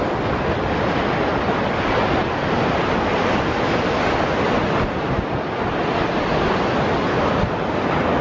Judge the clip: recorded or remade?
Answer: recorded